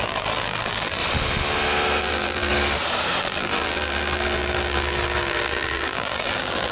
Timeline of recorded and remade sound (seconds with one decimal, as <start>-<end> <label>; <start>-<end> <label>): 0.0-1.0 remade; 1.0-2.0 recorded; 2.0-2.5 remade; 2.5-3.2 recorded; 3.2-6.7 remade